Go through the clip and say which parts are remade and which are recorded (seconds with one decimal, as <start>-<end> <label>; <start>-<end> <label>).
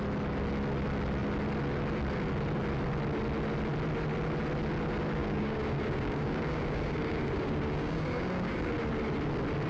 0.0-5.2 recorded; 5.2-8.7 remade; 8.7-9.7 recorded